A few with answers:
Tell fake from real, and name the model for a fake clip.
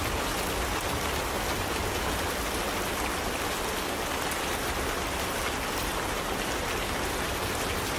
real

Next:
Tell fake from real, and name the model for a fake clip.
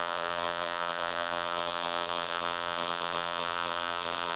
fake, vocoder, BigVGAN v2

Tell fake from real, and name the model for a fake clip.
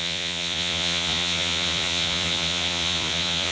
fake, vocoder, Vocos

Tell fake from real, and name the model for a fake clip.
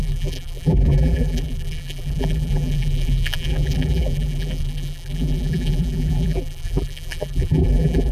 fake, vocoder, BigVGAN v2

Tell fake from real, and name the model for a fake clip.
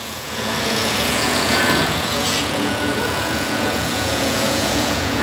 fake, vocoder, Vocos